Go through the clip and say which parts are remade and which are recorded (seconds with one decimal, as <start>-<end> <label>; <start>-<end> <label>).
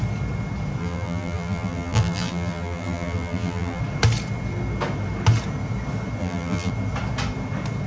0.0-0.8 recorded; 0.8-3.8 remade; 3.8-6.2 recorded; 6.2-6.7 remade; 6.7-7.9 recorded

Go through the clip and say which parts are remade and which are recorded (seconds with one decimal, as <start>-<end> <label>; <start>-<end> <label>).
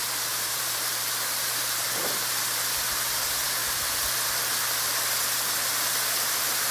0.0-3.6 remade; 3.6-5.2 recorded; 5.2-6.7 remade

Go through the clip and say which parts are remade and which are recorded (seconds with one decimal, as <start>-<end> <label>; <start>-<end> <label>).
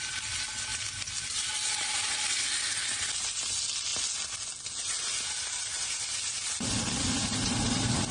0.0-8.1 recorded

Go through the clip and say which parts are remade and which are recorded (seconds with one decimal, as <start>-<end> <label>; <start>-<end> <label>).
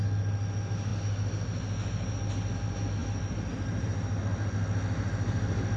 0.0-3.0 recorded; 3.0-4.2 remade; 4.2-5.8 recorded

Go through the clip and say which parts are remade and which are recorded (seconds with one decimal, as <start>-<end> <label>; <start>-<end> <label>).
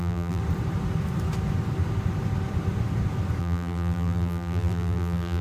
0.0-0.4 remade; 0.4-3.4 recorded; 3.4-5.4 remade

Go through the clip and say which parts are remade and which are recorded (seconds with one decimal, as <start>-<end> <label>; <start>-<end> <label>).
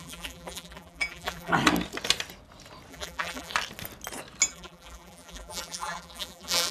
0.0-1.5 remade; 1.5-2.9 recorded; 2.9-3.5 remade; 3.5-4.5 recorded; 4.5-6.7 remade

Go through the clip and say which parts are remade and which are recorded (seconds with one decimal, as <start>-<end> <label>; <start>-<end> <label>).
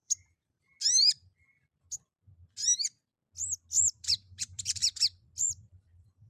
0.0-0.7 remade; 0.7-3.9 recorded; 3.9-4.8 remade; 4.8-5.4 recorded; 5.4-6.3 remade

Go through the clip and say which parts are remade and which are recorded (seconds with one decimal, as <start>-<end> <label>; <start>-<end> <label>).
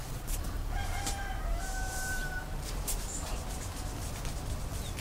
0.0-0.8 recorded; 0.8-3.8 remade; 3.8-5.0 recorded